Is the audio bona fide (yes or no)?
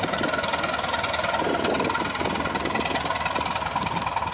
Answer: yes